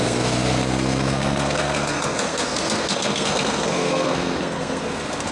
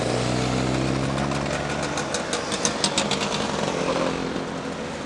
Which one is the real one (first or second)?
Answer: second